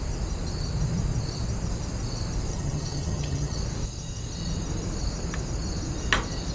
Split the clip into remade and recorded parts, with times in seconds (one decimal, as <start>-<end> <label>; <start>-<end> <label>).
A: 0.0-2.5 recorded; 2.5-3.6 remade; 3.6-6.5 recorded